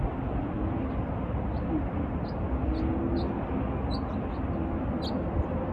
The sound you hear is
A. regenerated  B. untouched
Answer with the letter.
B